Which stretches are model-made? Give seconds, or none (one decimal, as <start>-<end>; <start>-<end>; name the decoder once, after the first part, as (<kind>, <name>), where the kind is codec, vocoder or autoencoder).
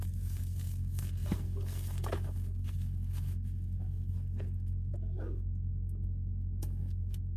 0.0-7.4 (codec, SNAC)